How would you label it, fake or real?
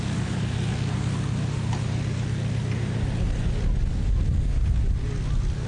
real